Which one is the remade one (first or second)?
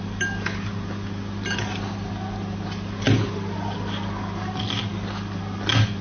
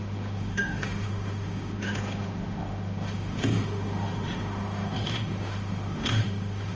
second